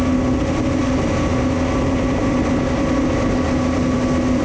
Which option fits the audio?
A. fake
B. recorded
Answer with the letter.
B